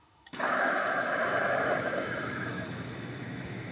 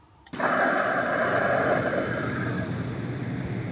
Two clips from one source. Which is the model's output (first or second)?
first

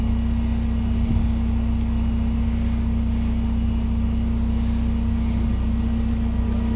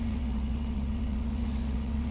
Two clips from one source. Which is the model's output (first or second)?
second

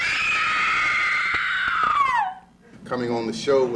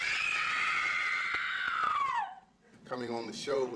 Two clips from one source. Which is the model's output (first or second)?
second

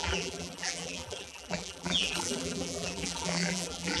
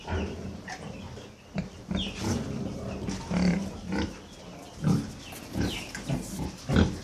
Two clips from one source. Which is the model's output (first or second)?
first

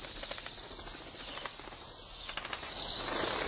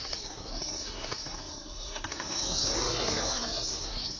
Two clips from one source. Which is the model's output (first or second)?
second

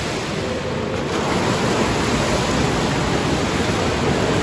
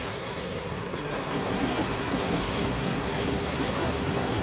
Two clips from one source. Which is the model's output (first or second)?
second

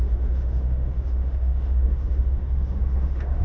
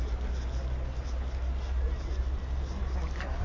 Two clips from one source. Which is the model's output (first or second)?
first